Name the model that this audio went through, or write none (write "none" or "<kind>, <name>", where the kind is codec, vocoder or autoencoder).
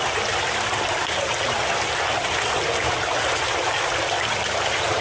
none